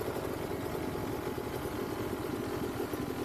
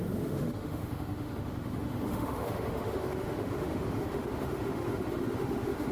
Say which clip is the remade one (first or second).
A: second